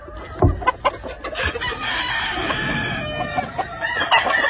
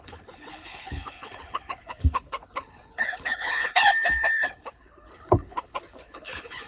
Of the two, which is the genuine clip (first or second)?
first